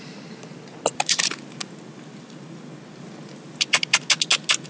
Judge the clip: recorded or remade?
recorded